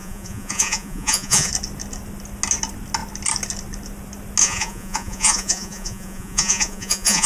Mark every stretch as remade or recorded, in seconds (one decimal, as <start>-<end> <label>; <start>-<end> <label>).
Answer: 0.0-1.5 remade; 1.5-4.4 recorded; 4.4-7.3 remade